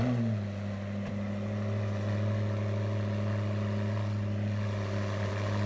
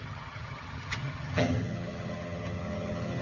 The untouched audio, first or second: first